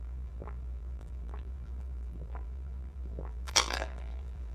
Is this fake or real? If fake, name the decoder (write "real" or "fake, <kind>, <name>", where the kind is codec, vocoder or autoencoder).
fake, vocoder, BigVGAN v2